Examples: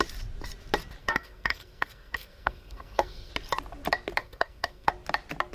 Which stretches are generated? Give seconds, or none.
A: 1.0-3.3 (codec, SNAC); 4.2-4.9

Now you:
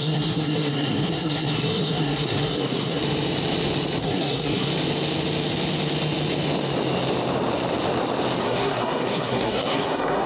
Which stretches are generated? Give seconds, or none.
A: 0.0-3.0 (codec, SNAC); 4.0-4.7; 8.4-10.3

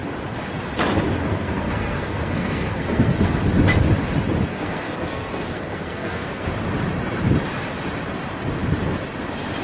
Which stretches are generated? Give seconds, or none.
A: 1.2-3.4 (codec, SNAC); 4.5-6.5

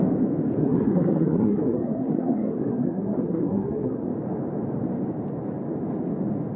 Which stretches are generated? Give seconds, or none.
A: 0.6-4.1 (codec, SNAC)